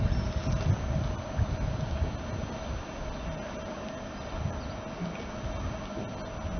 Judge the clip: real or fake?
real